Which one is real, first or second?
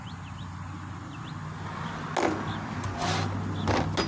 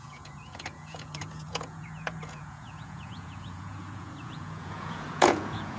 first